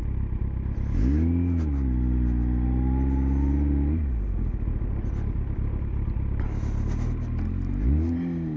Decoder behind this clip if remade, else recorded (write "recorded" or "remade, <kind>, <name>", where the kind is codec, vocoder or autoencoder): recorded